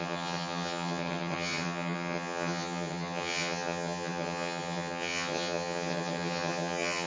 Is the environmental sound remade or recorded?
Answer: remade